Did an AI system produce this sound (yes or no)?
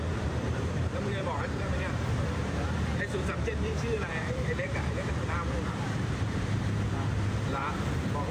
yes